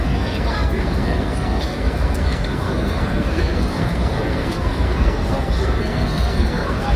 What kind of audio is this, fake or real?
fake